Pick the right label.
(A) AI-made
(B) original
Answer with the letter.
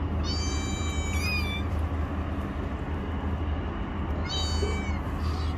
B